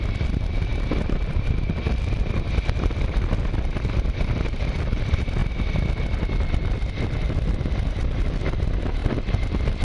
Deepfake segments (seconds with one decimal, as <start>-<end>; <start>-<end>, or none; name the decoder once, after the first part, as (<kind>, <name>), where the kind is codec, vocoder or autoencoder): 0.0-5.4 (vocoder, BigVGAN v2); 6.4-9.8

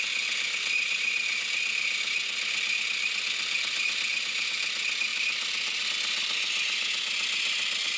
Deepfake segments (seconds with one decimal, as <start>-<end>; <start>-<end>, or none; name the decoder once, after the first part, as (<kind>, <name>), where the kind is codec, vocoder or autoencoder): 5.1-5.8 (vocoder, BigVGAN v2)

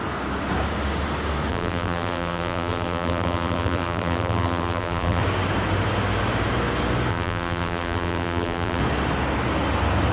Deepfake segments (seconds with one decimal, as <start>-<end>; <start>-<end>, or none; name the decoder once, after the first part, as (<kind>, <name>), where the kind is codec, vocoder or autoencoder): 1.5-5.2 (vocoder, BigVGAN v2); 7.1-8.8

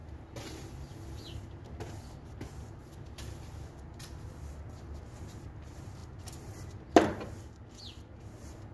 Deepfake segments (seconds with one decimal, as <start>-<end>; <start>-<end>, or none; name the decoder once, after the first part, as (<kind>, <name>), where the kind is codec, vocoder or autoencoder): none

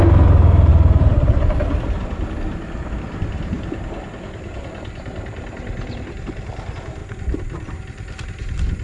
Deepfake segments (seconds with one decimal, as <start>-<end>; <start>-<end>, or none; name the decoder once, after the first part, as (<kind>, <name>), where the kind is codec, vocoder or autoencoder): 0.7-3.0 (vocoder, BigVGAN v2); 7.0-7.8

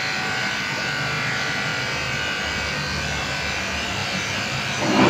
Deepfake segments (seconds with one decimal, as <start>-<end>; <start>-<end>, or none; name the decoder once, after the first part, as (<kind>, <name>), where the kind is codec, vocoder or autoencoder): 0.0-1.7 (vocoder, BigVGAN v2); 3.2-5.1

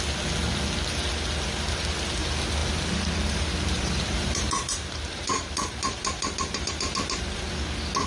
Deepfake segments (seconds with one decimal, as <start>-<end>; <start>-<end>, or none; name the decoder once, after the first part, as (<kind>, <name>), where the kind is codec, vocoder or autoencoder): 2.6-7.5 (vocoder, BigVGAN v2)

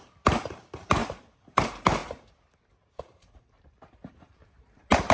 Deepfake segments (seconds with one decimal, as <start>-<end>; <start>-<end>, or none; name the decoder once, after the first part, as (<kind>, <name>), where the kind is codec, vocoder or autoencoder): 0.0-1.0 (vocoder, BigVGAN v2); 1.6-2.0; 3.0-5.1